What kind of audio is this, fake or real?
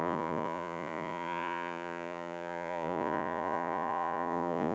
fake